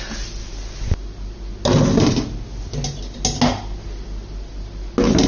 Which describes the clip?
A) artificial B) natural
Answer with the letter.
B